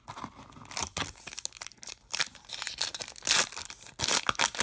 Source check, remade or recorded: recorded